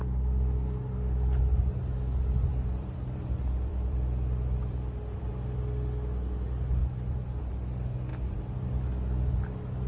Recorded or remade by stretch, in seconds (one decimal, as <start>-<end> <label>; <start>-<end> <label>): 0.0-2.5 recorded; 2.5-5.3 remade; 5.3-6.8 recorded; 6.8-7.4 remade; 7.4-9.9 recorded